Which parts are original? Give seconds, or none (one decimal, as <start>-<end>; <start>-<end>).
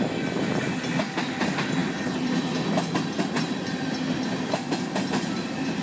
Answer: 0.0-5.8